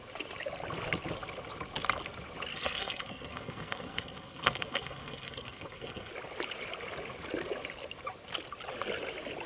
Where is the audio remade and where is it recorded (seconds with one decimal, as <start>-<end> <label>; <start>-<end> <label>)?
0.0-2.5 recorded; 2.5-6.1 remade; 6.1-9.5 recorded

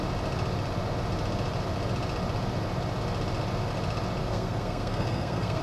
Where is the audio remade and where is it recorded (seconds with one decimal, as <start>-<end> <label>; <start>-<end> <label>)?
0.0-4.2 recorded; 4.2-5.6 remade

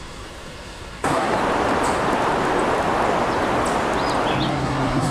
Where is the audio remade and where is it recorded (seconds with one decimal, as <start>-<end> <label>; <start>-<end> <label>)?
0.0-1.4 remade; 1.4-4.5 recorded; 4.5-5.1 remade